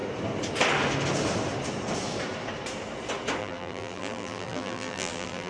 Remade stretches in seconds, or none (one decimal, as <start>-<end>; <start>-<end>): 3.4-5.5